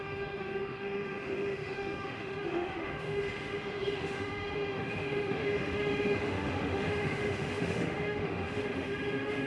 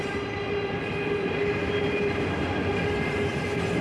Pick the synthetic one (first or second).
first